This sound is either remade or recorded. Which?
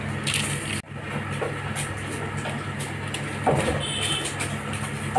recorded